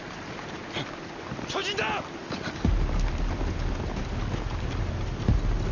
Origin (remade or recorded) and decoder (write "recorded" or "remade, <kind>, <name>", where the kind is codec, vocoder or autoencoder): recorded